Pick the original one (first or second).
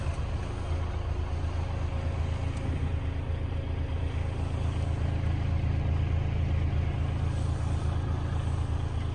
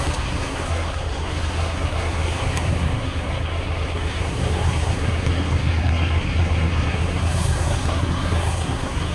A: first